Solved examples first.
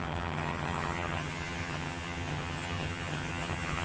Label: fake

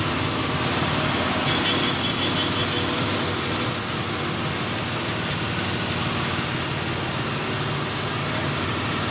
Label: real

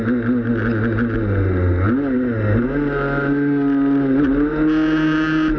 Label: real